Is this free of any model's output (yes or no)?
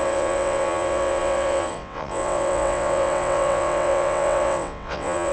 no